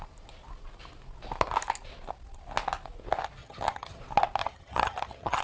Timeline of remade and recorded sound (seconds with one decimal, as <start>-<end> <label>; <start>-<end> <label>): 0.0-3.4 recorded; 3.4-4.0 remade; 4.0-4.4 recorded; 4.4-5.4 remade